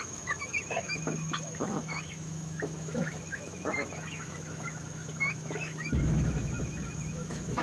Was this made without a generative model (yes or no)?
no